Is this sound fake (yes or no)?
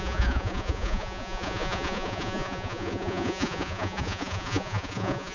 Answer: yes